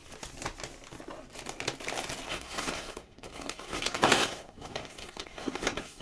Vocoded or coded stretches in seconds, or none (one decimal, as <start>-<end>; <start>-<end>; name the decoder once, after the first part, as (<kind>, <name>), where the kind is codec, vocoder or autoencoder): 2.3-6.0 (codec, SNAC)